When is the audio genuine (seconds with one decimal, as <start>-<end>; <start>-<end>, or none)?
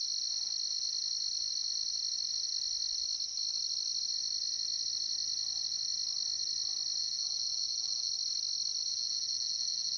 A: 0.0-7.0; 8.1-8.9